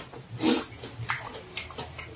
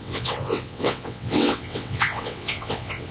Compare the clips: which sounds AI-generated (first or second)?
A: second